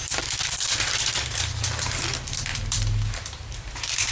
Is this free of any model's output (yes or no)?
no